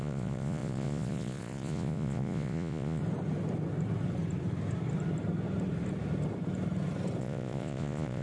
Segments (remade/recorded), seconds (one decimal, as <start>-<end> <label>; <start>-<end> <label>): 0.0-3.0 remade; 3.0-7.2 recorded; 7.2-8.2 remade